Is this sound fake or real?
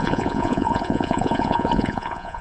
fake